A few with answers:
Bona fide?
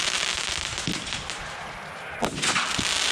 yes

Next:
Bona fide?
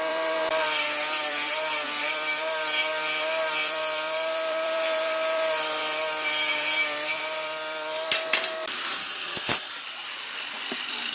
no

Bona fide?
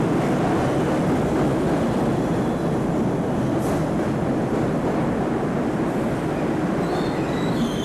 yes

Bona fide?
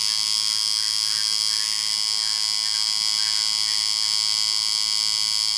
yes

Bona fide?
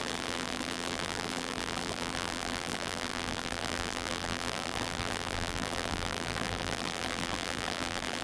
no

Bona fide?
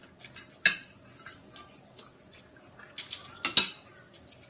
yes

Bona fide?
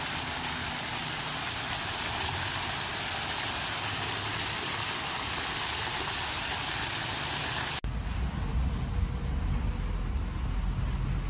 yes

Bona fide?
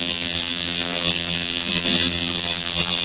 no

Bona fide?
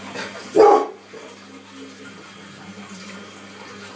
yes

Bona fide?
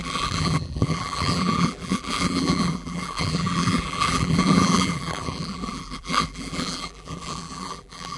no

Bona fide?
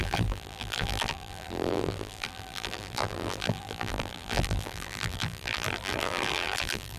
no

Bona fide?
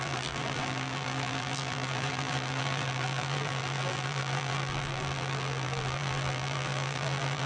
no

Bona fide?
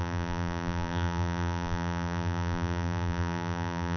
no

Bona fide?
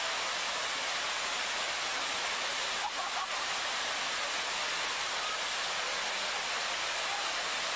yes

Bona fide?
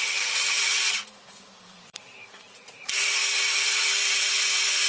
no